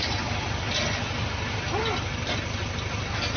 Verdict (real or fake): real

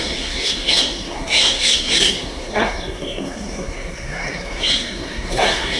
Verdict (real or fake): fake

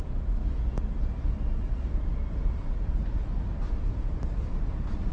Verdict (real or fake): real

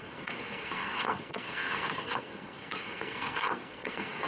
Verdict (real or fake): fake